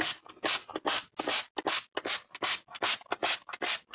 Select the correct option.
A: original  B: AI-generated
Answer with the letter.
A